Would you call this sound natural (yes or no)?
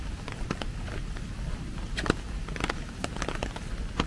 yes